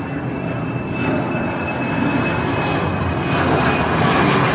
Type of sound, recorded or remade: recorded